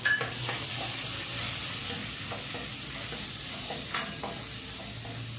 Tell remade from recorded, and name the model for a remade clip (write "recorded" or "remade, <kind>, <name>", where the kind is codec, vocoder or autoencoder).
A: recorded